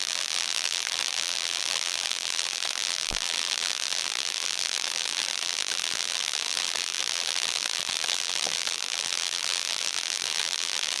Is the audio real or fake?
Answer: fake